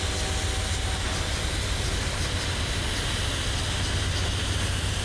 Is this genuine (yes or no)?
yes